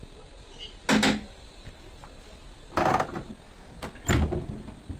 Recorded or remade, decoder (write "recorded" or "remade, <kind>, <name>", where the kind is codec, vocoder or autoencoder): recorded